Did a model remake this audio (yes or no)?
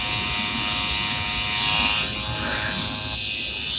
no